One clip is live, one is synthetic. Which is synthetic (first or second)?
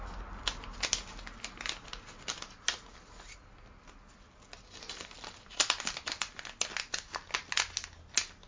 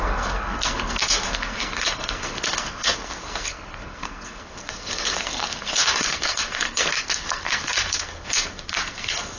second